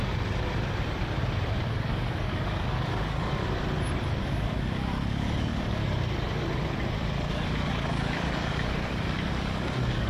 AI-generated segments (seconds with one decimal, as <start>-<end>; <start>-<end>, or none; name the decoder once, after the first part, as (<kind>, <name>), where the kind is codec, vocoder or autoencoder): 1.7-3.4 (codec, DAC); 4.2-5.8; 7.3-10.1

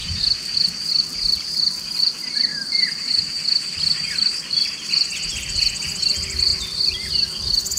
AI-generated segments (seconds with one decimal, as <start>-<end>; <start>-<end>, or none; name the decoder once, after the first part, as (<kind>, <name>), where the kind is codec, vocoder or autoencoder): 0.0-0.8 (vocoder, BigVGAN v2); 2.5-4.3; 6.5-7.8

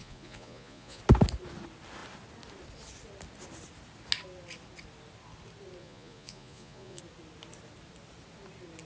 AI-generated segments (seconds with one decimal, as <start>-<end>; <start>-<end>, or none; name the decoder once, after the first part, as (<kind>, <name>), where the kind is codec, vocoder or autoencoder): 0.0-1.0 (vocoder, Vocos); 5.8-7.0

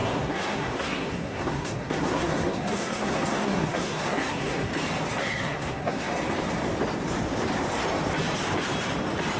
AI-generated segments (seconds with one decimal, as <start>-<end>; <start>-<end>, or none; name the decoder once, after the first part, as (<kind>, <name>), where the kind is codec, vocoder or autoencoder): 0.0-4.7 (codec, SNAC); 5.2-6.1